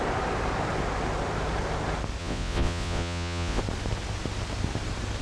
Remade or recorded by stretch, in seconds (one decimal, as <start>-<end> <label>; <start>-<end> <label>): 0.0-2.2 recorded; 2.2-3.6 remade; 3.6-5.2 recorded